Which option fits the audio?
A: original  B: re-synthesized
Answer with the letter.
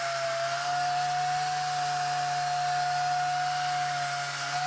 A